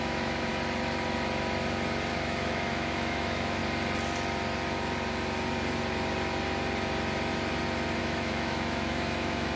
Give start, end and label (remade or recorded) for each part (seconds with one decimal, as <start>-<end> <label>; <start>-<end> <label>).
0.0-0.5 remade; 0.5-2.1 recorded; 2.1-3.6 remade; 3.6-8.0 recorded; 8.0-9.6 remade